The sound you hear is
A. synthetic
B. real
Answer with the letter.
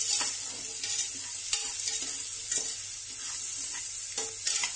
B